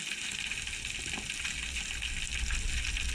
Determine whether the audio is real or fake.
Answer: real